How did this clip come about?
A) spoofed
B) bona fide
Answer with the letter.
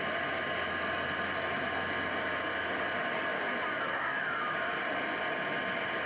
B